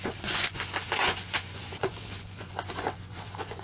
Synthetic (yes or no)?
yes